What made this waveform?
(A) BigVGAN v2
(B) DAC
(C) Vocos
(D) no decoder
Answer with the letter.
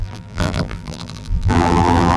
A